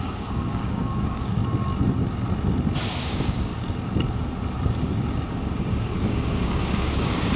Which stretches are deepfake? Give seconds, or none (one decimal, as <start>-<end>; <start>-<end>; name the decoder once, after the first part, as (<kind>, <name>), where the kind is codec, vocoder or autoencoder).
0.0-1.4 (codec, DAC); 3.0-3.5; 5.7-7.4

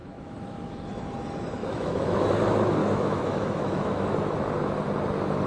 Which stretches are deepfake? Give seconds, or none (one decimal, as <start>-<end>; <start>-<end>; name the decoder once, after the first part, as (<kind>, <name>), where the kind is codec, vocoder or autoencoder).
0.0-0.9 (autoencoder, DAC-VAE); 1.6-2.3; 2.8-4.4

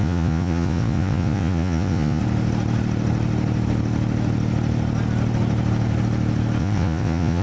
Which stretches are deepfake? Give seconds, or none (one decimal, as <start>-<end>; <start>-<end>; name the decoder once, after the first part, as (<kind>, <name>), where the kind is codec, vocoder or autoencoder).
0.0-2.2 (vocoder, Vocos); 6.6-7.4

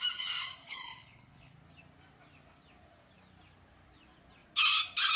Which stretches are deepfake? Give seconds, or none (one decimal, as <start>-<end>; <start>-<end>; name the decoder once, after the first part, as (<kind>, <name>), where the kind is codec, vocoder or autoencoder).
0.6-1.5 (codec, HILCodec)

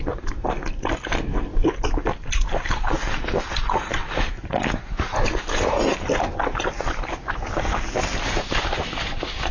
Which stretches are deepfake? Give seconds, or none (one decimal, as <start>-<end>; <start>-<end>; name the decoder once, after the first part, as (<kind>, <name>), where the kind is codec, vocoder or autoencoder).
none

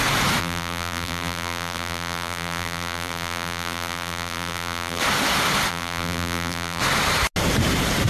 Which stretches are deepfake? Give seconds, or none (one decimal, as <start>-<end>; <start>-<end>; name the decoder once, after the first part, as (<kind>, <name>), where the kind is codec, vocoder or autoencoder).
0.4-5.0 (vocoder, BigVGAN v2); 5.7-6.8

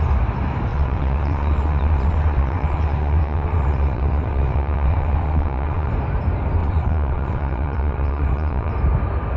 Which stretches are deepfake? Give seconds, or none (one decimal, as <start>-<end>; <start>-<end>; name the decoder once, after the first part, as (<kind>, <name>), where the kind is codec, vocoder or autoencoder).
0.7-5.9 (vocoder, WaveNeXt); 6.6-8.7